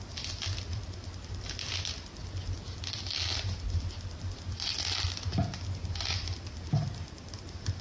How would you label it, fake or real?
real